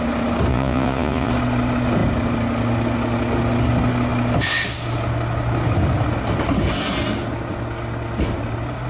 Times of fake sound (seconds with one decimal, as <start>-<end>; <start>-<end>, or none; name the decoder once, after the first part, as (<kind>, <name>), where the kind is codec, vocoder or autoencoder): 0.5-1.3 (vocoder, Vocos)